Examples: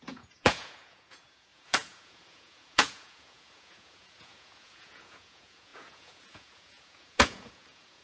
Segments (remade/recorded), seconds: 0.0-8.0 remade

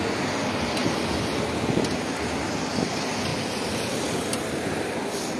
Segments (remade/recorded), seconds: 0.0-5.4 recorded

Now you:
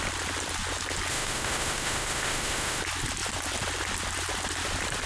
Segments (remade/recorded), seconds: 0.0-1.1 recorded; 1.1-2.8 remade; 2.8-5.1 recorded

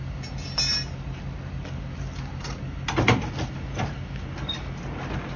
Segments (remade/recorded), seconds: 0.0-5.4 recorded

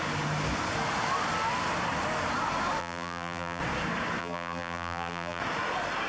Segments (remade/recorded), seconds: 0.0-2.8 recorded; 2.8-3.6 remade; 3.6-4.2 recorded; 4.2-5.4 remade; 5.4-6.1 recorded